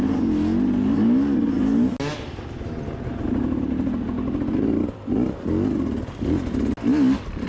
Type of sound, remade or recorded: recorded